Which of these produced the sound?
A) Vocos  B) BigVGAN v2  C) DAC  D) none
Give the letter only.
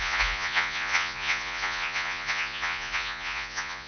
A